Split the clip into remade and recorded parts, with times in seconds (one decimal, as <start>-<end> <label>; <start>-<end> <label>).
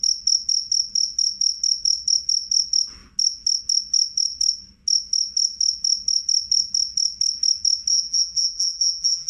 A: 0.0-7.9 recorded; 7.9-9.3 remade